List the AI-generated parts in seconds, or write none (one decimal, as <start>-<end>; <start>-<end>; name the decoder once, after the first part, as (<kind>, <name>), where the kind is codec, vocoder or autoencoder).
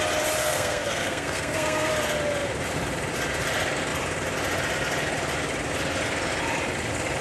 0.4-1.9 (codec, SNAC)